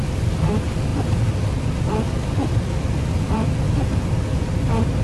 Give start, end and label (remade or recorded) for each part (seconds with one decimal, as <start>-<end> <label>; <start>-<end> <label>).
0.0-5.0 recorded